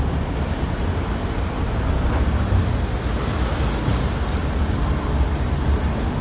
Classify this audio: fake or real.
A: real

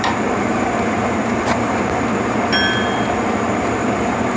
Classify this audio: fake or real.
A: fake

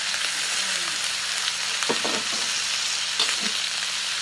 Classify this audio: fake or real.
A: real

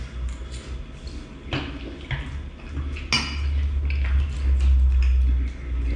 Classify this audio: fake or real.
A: real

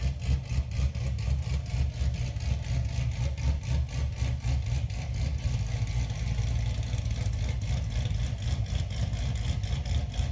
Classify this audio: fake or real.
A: real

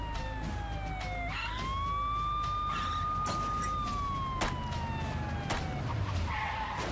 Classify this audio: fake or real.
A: real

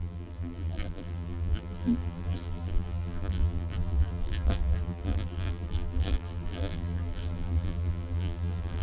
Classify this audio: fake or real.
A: fake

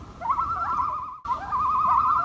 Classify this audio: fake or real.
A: real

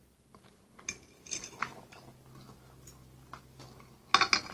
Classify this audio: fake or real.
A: real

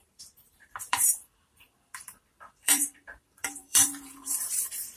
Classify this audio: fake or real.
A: fake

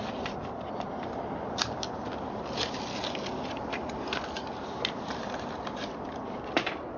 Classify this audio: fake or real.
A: fake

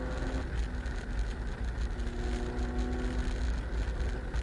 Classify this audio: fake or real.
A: real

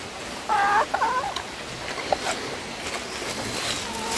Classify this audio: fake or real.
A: real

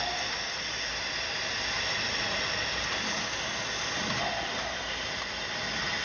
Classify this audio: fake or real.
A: real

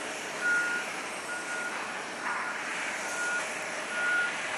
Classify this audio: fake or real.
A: fake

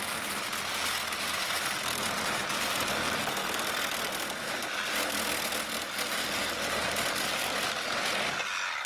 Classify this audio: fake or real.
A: real